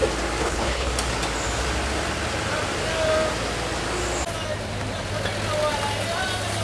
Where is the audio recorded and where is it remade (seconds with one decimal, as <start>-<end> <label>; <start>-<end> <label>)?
0.0-0.4 recorded; 0.4-0.9 remade; 0.9-6.6 recorded